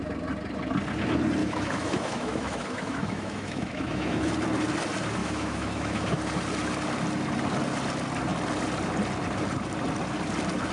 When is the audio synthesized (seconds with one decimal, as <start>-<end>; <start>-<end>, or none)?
1.4-4.3; 5.2-6.2